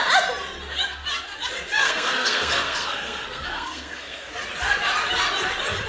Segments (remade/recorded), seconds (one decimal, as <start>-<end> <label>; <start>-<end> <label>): 0.0-1.8 recorded; 1.8-4.3 remade; 4.3-5.9 recorded